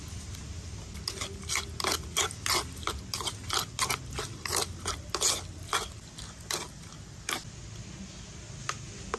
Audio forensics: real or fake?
real